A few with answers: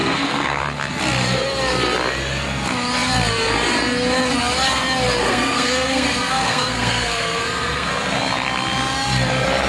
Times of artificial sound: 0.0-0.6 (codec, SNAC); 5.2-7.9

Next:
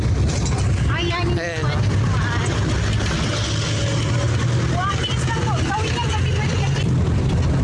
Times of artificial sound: none